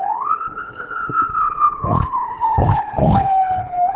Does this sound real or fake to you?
fake